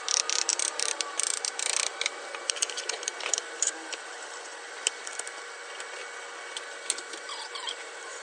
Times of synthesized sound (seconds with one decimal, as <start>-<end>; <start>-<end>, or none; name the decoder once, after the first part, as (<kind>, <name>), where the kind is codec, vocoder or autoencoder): 0.0-4.5 (vocoder, BigVGAN v2); 7.1-8.2

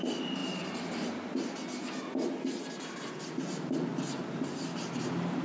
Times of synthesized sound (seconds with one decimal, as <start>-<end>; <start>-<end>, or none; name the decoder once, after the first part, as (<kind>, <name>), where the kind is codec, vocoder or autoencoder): none

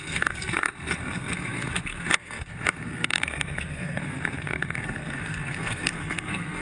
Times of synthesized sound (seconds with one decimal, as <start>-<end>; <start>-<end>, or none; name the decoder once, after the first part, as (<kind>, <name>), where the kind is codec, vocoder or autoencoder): 0.0-6.6 (codec, SNAC)

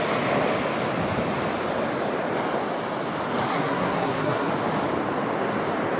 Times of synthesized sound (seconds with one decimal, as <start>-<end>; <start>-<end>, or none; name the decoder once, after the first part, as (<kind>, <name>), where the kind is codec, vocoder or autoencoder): 3.5-4.5 (codec, SNAC)